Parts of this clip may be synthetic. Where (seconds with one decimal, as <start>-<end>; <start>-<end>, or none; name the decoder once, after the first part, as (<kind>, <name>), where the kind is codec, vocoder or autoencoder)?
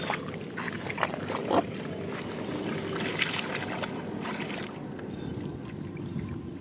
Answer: none